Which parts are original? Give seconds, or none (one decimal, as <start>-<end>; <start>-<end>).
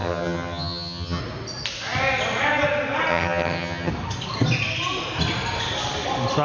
1.2-3.1; 3.9-6.4